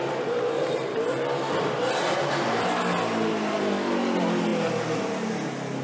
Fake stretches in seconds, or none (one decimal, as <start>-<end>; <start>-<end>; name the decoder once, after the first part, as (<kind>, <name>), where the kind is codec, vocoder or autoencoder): none